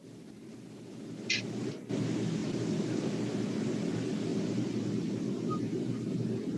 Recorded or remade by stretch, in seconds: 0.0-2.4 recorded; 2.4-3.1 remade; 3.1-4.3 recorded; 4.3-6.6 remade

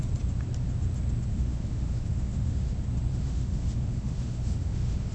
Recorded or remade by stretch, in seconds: 0.0-1.3 recorded; 1.3-2.7 remade; 2.7-3.1 recorded; 3.1-5.1 remade

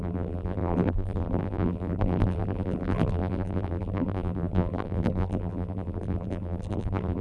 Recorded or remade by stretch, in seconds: 0.0-7.2 remade